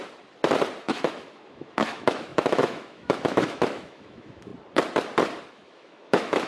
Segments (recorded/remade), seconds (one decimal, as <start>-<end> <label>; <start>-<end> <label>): 0.0-0.8 recorded; 0.8-4.5 remade; 4.5-5.5 recorded; 5.5-6.5 remade